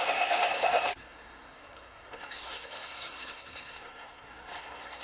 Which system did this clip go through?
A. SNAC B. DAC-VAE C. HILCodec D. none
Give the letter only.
A